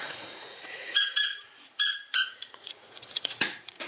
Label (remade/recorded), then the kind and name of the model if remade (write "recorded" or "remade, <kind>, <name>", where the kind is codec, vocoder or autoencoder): remade, vocoder, Vocos